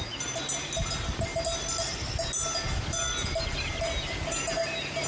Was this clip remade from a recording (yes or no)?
no